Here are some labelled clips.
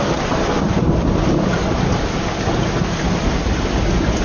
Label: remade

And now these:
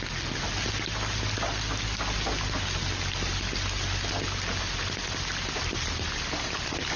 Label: recorded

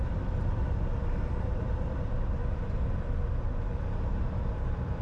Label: remade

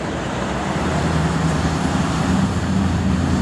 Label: remade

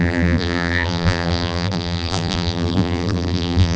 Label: remade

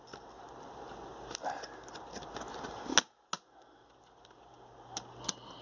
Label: recorded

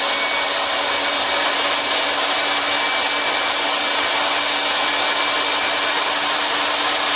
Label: recorded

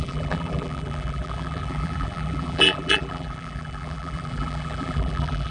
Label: remade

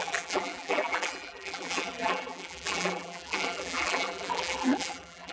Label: remade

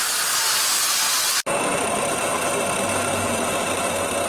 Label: recorded